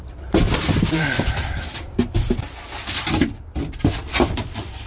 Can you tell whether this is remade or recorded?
remade